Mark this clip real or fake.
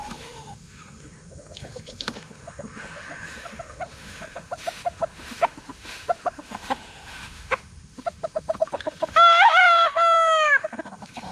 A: fake